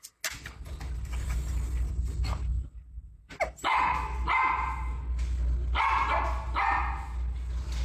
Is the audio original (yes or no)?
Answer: yes